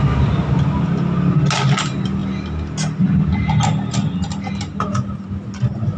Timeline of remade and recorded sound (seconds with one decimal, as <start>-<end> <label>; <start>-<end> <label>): 0.0-6.0 recorded